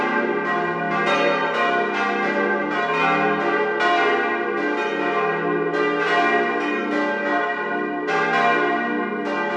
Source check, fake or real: real